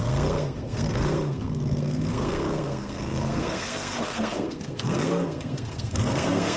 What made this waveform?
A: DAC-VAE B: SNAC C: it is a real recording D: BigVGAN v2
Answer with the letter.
B